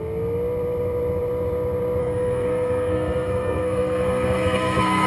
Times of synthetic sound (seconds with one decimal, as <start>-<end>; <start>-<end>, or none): 2.0-5.1